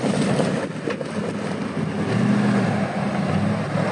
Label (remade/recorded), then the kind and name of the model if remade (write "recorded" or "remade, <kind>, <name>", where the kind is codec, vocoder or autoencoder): recorded